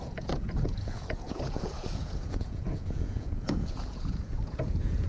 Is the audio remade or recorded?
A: remade